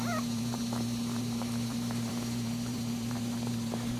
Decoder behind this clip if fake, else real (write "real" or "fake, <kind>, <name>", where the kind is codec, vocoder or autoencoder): fake, vocoder, BigVGAN v2